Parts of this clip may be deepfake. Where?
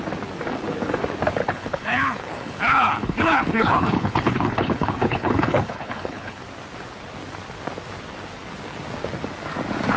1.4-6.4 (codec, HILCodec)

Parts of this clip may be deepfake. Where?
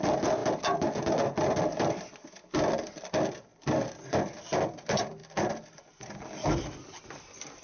3.5-4.1 (vocoder, BigVGAN v2); 5.2-7.6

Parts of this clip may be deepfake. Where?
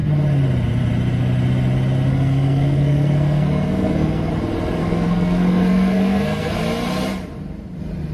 2.1-4.3 (codec, SNAC); 4.8-6.6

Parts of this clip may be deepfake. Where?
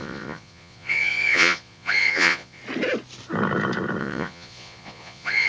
0.0-2.6 (vocoder, Vocos); 4.0-5.5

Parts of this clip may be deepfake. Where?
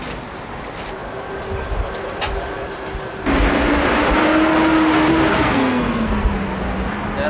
5.3-6.3 (codec, SNAC)